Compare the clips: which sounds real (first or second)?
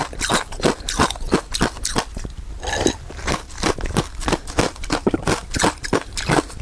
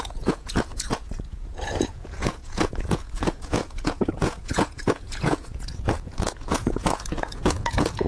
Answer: first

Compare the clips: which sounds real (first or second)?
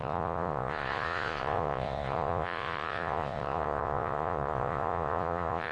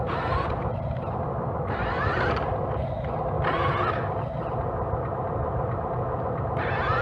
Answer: second